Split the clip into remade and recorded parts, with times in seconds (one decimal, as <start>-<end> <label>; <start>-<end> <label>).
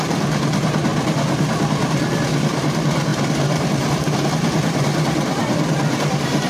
0.0-3.1 recorded; 3.1-4.3 remade; 4.3-5.4 recorded; 5.4-6.5 remade